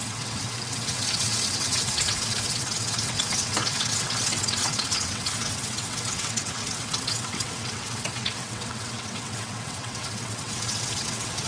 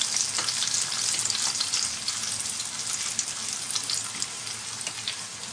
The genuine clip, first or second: second